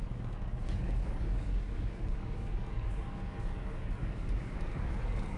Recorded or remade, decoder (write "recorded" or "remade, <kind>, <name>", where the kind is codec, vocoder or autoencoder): remade, codec, DAC